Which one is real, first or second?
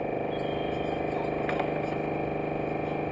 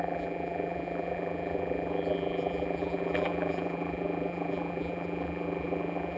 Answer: first